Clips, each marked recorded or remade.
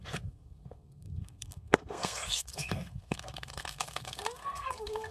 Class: remade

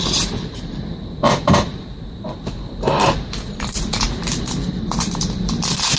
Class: remade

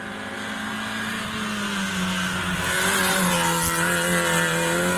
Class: recorded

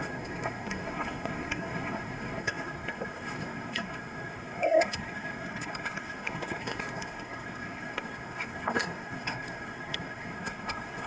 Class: remade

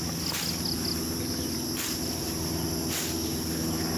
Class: recorded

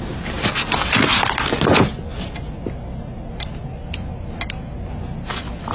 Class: recorded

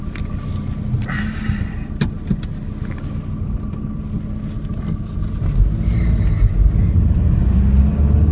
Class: recorded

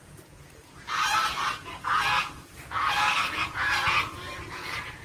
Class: remade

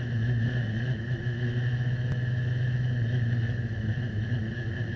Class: remade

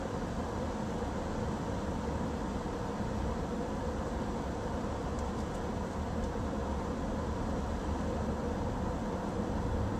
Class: recorded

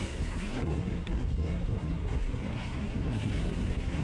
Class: remade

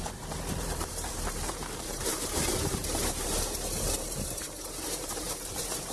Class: remade